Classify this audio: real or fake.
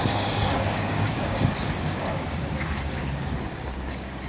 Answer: fake